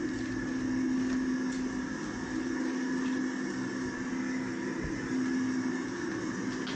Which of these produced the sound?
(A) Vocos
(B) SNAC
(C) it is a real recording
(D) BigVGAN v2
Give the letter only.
C